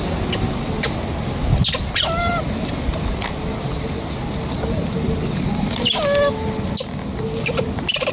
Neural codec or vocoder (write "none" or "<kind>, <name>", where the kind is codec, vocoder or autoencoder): none